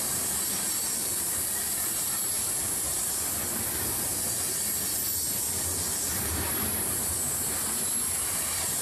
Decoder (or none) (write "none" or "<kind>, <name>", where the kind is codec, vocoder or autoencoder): none